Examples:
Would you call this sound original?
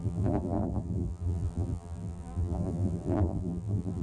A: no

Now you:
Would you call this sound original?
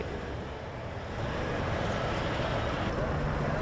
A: yes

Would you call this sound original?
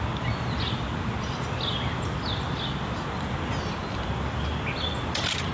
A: yes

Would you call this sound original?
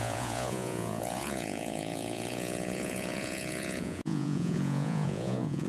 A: no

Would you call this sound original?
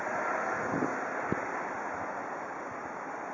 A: yes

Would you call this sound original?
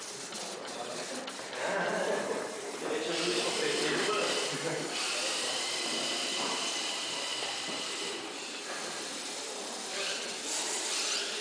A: no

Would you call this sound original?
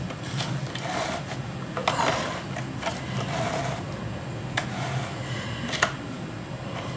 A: yes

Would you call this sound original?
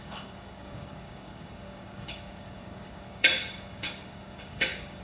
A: no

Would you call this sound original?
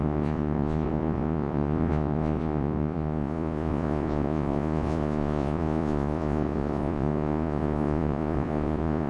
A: no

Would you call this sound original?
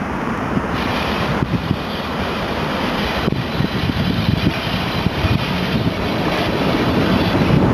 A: no